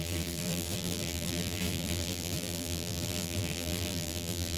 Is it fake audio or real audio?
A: fake